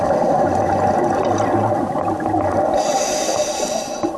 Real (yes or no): yes